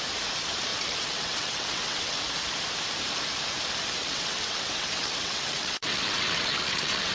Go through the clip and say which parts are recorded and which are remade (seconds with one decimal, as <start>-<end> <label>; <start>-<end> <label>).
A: 0.0-0.7 recorded; 0.7-2.2 remade; 2.2-4.0 recorded; 4.0-7.1 remade